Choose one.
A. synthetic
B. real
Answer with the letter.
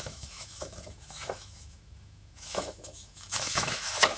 A